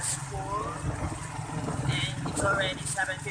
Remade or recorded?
recorded